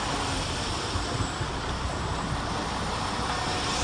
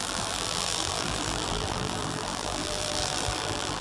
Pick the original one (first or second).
first